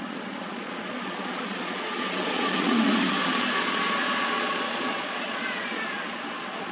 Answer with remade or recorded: remade